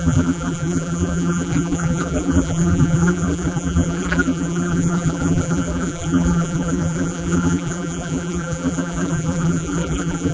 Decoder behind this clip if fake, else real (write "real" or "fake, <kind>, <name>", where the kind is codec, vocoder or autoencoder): fake, vocoder, BigVGAN v2